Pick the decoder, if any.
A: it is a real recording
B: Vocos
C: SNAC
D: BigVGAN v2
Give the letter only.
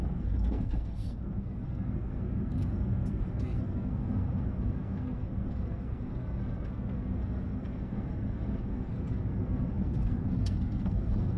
C